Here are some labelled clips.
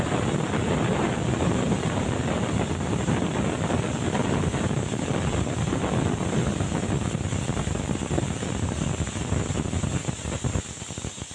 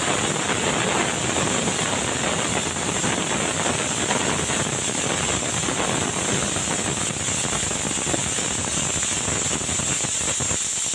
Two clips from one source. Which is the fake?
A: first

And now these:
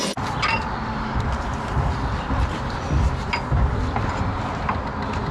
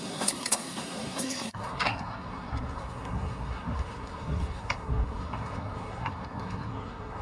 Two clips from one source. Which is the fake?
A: second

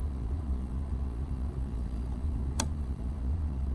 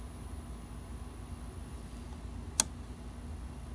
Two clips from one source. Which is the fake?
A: first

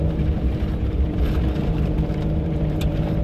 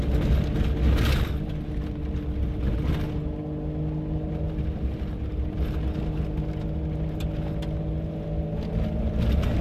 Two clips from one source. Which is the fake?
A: first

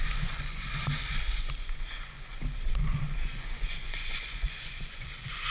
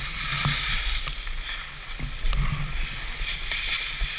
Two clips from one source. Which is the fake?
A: first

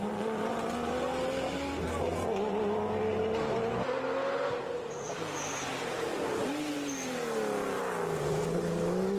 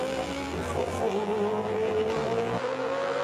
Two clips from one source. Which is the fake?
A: second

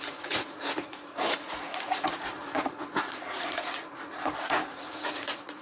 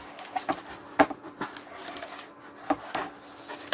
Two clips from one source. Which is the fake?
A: first